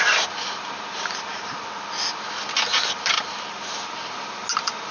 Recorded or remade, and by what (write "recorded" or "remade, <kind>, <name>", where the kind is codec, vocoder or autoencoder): recorded